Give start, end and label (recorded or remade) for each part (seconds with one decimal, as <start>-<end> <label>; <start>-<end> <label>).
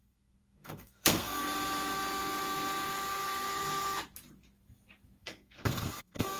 0.0-1.4 remade; 1.4-5.2 recorded; 5.2-6.4 remade